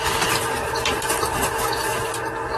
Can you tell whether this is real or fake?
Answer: real